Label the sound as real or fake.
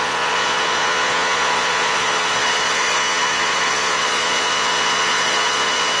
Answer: fake